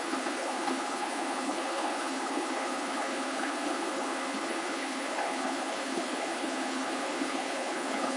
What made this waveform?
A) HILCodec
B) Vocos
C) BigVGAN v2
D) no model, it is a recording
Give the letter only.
A